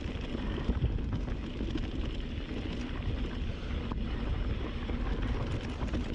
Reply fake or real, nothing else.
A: real